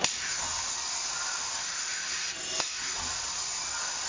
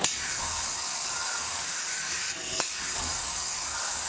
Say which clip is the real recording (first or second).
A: first